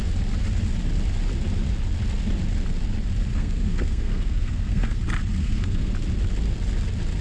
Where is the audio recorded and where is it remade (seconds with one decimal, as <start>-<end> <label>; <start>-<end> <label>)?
0.0-3.3 recorded; 3.3-5.0 remade; 5.0-5.4 recorded; 5.4-5.9 remade; 5.9-7.2 recorded